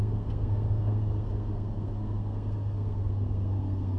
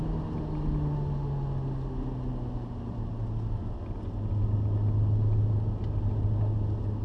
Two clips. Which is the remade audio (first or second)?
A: first